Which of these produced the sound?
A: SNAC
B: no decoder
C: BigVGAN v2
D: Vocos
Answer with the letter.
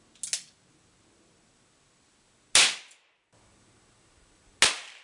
B